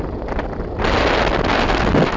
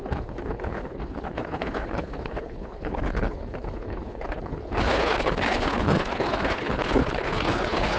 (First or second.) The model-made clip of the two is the second